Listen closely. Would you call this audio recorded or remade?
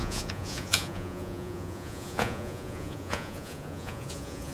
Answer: remade